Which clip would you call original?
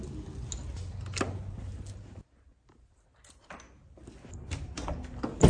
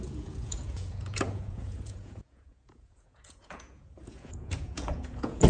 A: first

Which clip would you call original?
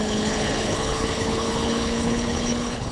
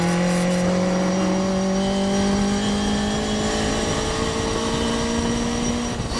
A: second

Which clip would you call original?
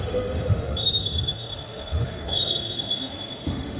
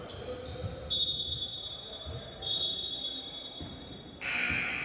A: second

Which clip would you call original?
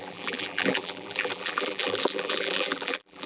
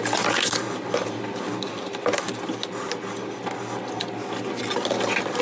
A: second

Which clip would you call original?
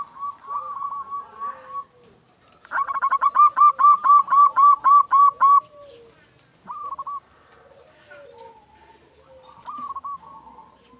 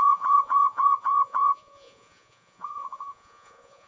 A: first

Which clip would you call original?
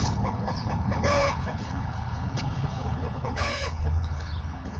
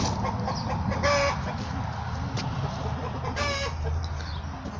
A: second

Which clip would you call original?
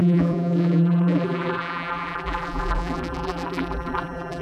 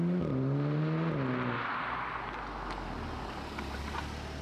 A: second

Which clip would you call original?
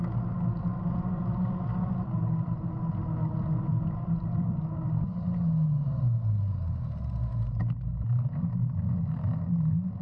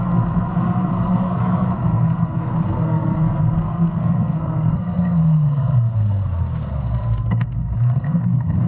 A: first